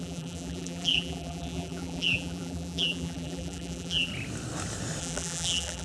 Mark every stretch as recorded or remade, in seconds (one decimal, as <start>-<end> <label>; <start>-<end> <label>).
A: 0.0-4.1 remade; 4.1-5.0 recorded; 5.0-5.8 remade